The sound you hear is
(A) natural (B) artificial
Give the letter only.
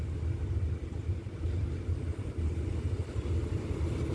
A